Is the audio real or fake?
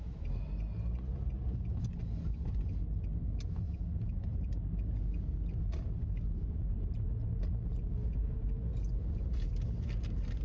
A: real